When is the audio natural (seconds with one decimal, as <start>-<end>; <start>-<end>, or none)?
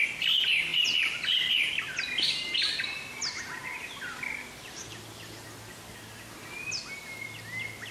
0.0-7.9